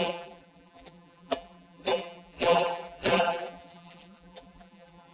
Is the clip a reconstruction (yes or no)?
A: yes